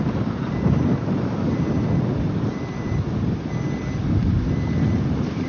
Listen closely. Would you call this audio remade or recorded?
remade